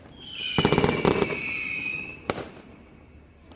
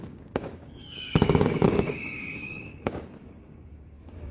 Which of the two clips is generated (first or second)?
second